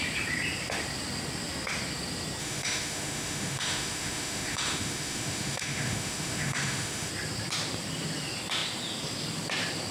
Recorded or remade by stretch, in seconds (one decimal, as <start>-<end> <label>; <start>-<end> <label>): 0.0-2.4 recorded; 2.4-7.1 remade; 7.1-9.9 recorded